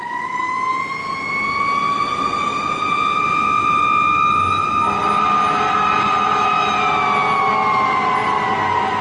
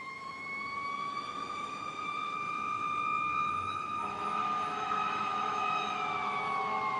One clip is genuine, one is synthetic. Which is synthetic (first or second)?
second